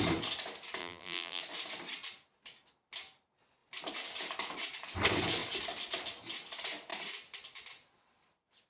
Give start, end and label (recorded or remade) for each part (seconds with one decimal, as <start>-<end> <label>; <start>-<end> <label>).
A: 0.0-0.8 recorded; 0.8-1.4 remade; 1.4-8.7 recorded